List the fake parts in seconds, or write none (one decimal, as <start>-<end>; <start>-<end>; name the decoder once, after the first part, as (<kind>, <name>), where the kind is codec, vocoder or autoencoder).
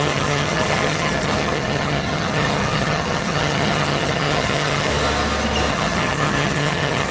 0.0-4.9 (vocoder, HiFi-GAN); 5.7-7.1